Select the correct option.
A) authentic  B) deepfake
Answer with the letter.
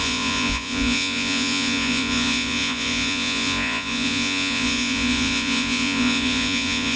B